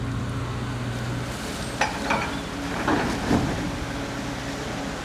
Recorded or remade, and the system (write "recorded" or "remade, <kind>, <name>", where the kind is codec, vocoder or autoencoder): recorded